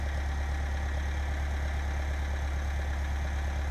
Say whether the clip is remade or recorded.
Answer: recorded